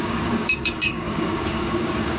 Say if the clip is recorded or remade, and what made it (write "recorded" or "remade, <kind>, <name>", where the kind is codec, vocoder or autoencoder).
remade, codec, DAC